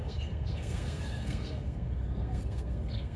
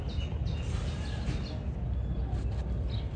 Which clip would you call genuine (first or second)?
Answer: second